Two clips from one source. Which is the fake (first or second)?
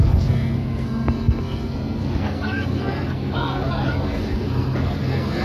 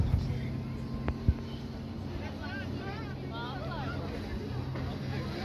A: first